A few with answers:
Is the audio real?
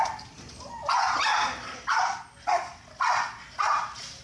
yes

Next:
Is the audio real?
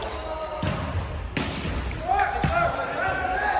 yes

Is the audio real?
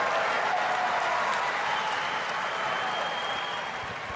yes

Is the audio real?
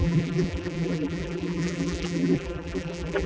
no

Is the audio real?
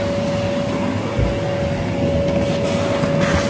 yes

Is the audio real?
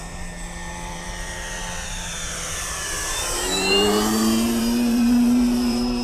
no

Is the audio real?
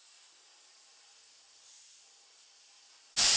yes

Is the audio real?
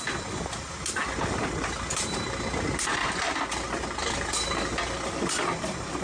yes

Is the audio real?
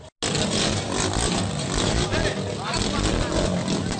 yes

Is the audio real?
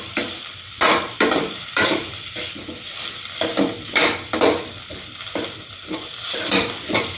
no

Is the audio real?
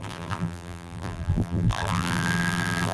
no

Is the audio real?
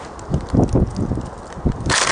yes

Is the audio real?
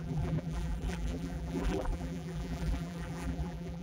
no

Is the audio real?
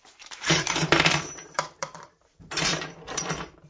no